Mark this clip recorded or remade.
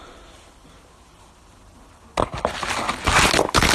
recorded